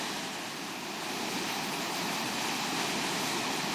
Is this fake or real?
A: real